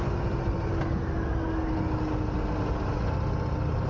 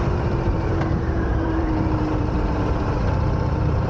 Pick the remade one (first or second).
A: second